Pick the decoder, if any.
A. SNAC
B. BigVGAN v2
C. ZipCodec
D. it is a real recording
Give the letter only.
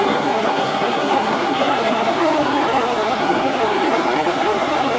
A